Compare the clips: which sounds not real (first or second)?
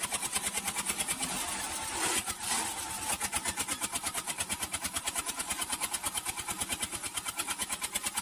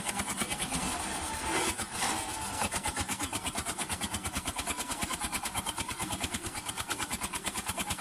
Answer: second